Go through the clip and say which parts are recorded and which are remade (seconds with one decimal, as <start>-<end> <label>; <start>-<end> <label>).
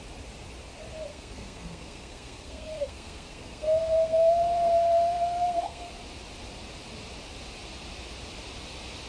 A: 0.0-1.1 recorded; 1.1-5.9 remade; 5.9-9.1 recorded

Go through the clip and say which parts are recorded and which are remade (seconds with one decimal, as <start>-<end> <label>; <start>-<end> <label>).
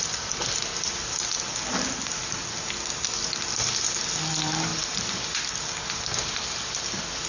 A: 0.0-7.3 recorded